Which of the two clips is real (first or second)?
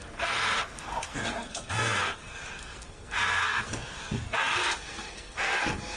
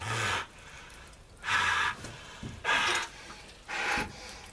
second